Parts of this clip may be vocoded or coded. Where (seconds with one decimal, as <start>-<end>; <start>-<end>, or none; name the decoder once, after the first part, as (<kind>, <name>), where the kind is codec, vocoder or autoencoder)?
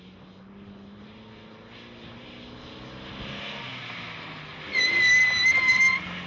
none